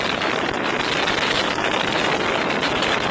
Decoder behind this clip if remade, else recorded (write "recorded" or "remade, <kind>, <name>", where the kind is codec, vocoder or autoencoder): recorded